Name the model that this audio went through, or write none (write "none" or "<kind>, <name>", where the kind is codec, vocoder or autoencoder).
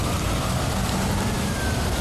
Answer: none